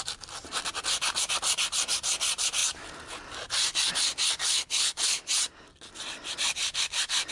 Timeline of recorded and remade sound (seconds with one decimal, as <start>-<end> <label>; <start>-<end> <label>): 0.0-4.4 recorded; 4.4-5.3 remade; 5.3-7.3 recorded